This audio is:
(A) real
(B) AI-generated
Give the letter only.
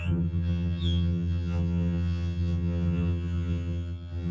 B